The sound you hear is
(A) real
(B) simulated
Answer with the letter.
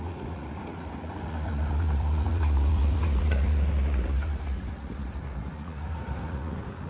B